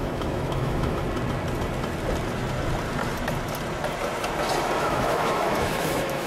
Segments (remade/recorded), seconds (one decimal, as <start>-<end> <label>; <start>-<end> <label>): 0.0-1.0 remade; 1.0-4.8 recorded; 4.8-6.3 remade